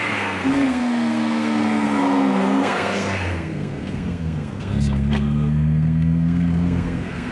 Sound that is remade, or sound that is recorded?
remade